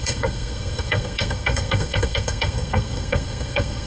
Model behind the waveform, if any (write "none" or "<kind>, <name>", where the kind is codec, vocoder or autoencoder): codec, SNAC